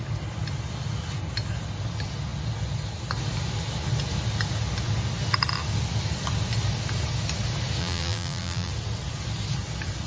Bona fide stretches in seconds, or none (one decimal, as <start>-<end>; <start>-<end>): 0.0-7.8; 8.7-10.1